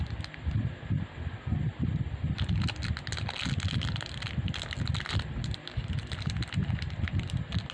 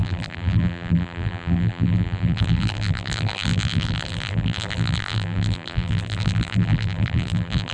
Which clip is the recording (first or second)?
first